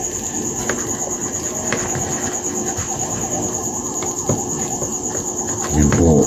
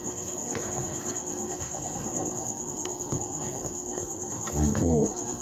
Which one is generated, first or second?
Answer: second